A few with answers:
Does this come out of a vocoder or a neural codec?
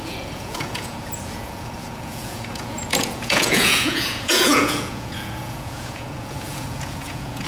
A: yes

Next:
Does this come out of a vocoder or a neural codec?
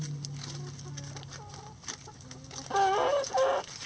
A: no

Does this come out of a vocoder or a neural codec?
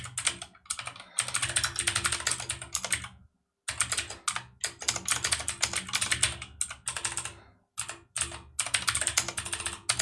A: no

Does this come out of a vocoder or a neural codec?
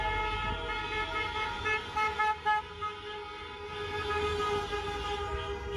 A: no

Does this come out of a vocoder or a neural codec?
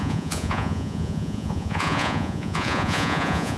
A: yes